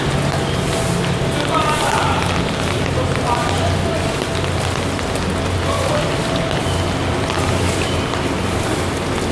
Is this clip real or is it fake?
real